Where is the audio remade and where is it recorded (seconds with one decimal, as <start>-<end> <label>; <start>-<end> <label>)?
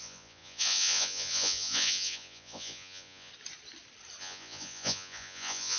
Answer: 0.0-3.3 remade; 3.3-4.2 recorded; 4.2-5.8 remade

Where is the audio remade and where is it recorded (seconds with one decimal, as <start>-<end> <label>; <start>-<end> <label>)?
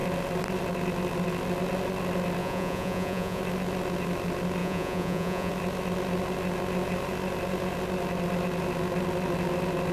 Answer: 0.0-2.4 recorded; 2.4-3.4 remade; 3.4-4.6 recorded; 4.6-5.5 remade; 5.5-9.9 recorded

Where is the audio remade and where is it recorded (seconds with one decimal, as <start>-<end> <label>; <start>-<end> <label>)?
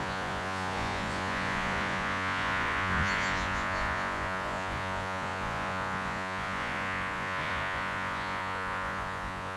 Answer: 0.0-9.6 remade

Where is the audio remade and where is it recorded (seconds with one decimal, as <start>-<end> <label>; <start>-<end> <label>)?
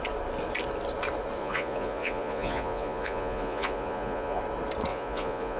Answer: 0.0-1.4 recorded; 1.4-4.4 remade; 4.4-4.9 recorded; 4.9-5.6 remade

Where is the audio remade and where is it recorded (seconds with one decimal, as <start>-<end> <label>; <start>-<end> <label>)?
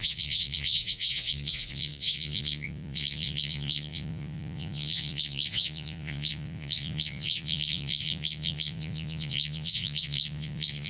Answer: 0.0-10.9 remade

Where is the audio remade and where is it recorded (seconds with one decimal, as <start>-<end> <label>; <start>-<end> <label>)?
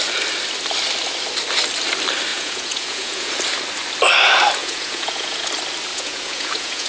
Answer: 0.0-2.3 recorded; 2.3-3.3 remade; 3.3-4.6 recorded; 4.6-5.5 remade; 5.5-5.9 recorded; 5.9-6.9 remade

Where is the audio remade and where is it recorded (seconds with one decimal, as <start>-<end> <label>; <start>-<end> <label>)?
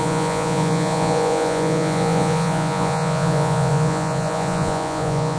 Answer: 0.0-5.4 remade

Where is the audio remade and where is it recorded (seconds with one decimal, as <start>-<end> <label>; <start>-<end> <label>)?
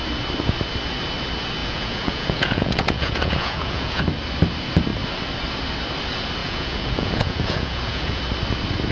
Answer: 0.0-1.6 recorded; 1.6-4.0 remade; 4.0-6.4 recorded; 6.4-8.2 remade; 8.2-8.9 recorded